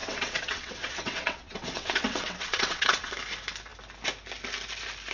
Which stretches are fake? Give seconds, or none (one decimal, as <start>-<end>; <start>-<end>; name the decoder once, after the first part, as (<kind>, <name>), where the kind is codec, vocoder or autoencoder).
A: 0.0-3.1 (vocoder, WaveNeXt)